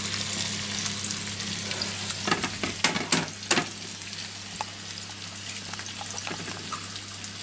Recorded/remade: recorded